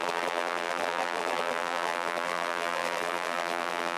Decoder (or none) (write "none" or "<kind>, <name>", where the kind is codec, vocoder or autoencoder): vocoder, BigVGAN v2